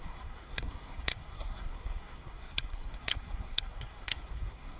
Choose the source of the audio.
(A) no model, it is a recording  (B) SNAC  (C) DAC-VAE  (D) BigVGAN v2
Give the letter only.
B